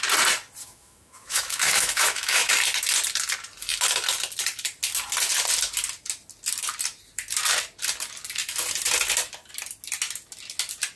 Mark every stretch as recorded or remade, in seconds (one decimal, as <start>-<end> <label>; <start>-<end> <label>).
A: 0.0-0.6 recorded; 0.6-2.5 remade; 2.5-11.0 recorded